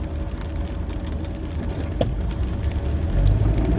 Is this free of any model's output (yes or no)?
yes